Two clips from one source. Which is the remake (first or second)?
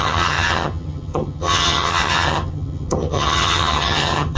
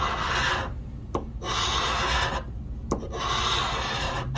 first